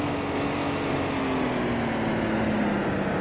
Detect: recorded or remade recorded